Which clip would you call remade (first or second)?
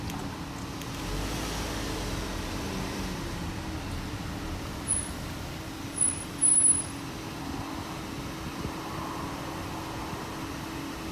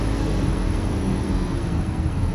second